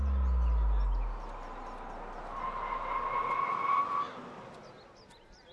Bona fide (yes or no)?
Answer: yes